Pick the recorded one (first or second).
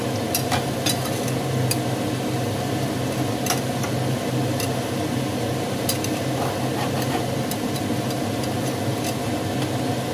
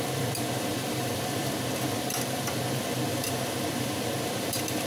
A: first